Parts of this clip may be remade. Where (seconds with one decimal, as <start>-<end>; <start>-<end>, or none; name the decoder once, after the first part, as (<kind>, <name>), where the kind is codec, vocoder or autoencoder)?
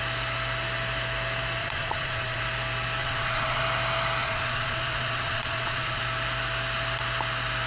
1.6-2.4 (vocoder, Vocos); 3.0-3.6; 4.2-6.0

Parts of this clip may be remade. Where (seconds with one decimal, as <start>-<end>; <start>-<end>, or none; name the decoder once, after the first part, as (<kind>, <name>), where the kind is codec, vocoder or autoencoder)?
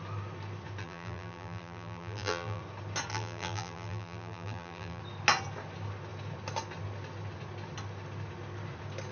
0.8-2.6 (vocoder, BigVGAN v2); 3.1-5.0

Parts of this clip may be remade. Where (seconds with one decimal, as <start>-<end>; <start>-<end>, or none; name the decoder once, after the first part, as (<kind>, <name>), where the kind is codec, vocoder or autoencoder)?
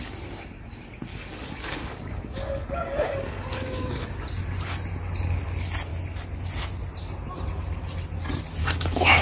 1.1-4.1 (codec, DAC); 8.6-9.2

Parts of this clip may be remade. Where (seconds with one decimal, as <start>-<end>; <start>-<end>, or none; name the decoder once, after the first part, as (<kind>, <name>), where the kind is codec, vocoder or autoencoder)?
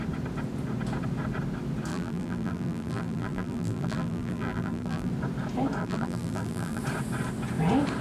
1.9-5.1 (vocoder, BigVGAN v2); 5.8-6.8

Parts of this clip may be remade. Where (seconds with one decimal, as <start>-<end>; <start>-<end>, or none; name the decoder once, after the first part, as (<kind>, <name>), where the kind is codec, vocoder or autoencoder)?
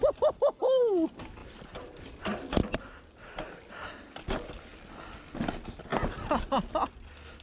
none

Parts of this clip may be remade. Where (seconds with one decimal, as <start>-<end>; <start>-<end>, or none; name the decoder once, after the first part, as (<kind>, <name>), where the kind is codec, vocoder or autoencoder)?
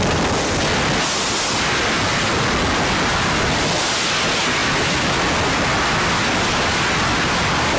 none